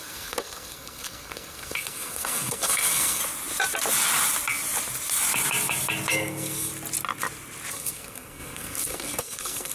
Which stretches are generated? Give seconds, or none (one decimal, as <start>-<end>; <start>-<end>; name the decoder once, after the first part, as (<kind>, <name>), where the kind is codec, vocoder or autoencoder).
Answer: 0.0-3.2 (codec, SNAC); 6.1-6.7; 7.7-9.7